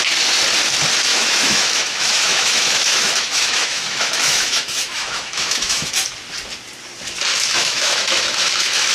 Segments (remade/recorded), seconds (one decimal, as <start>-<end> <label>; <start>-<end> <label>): 0.0-1.1 recorded; 1.1-5.9 remade; 5.9-7.3 recorded; 7.3-8.9 remade